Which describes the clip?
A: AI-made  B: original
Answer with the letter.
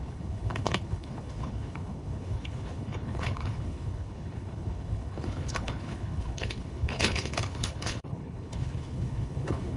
A